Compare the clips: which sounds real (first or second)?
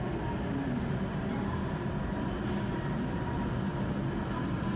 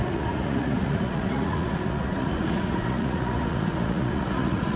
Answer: first